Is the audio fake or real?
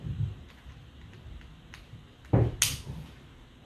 real